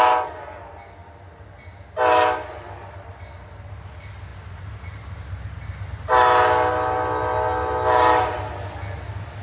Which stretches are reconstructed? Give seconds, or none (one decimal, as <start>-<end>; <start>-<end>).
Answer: 4.3-5.3